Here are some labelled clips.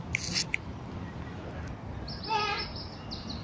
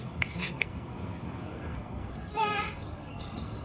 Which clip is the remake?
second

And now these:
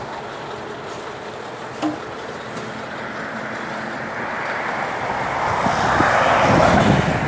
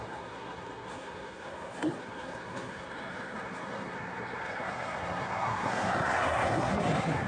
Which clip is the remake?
second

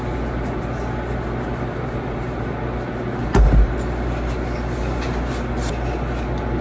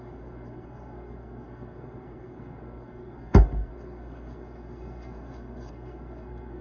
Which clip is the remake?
second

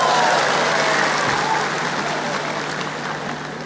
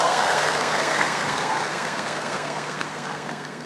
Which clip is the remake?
second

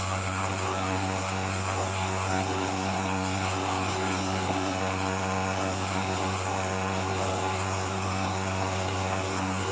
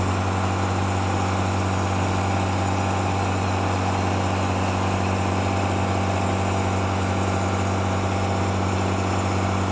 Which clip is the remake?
first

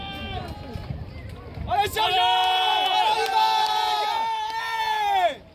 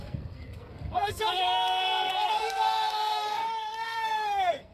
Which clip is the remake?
second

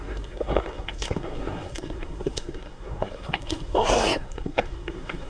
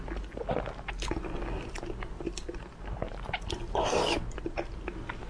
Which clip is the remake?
first